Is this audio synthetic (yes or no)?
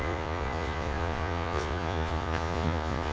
yes